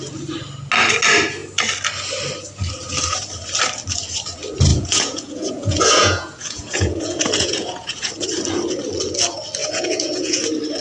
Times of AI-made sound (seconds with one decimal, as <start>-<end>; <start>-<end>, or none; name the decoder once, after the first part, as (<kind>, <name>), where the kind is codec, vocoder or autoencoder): 4.7-8.1 (vocoder, Vocos); 9.6-10.4